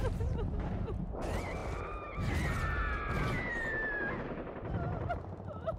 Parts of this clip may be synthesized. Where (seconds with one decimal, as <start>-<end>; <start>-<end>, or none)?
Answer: 0.0-5.8